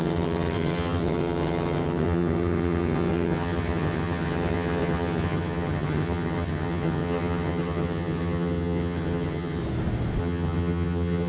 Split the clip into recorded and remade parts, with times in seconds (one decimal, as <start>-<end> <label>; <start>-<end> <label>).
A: 0.0-9.6 remade; 9.6-10.2 recorded; 10.2-11.3 remade